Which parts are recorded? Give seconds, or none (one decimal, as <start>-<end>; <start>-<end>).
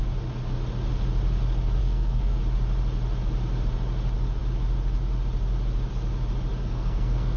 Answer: 0.0-1.8; 2.4-6.6